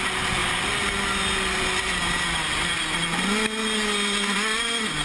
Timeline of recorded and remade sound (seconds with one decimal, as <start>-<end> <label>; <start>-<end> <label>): 0.0-5.0 recorded